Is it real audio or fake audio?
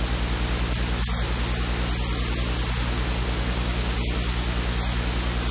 real